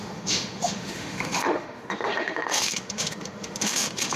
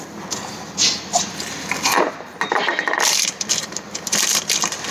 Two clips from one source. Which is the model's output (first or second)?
first